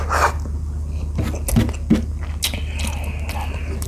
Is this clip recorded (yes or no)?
yes